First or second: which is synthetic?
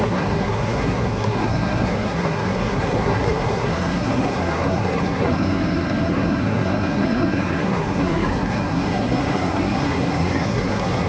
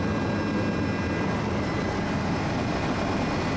first